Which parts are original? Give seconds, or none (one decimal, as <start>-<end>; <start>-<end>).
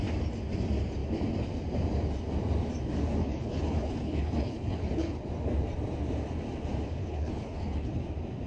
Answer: 0.0-3.2; 5.2-7.0; 8.0-8.5